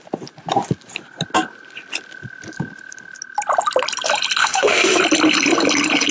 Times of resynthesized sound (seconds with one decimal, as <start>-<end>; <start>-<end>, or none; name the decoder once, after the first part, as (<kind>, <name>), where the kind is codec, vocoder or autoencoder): 4.4-5.0 (autoencoder, DAC-VAE)